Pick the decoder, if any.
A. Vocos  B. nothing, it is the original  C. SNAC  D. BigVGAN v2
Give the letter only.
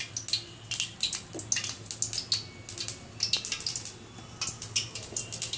B